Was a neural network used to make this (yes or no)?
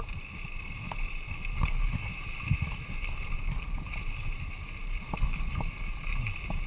no